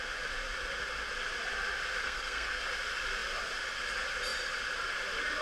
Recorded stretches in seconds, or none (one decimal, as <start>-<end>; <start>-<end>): 0.0-2.0; 2.6-5.4